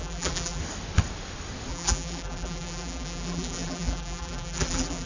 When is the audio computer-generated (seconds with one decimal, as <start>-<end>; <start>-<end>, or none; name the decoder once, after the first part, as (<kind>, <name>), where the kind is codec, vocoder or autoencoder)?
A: 0.0-0.6 (vocoder, BigVGAN v2); 1.7-5.1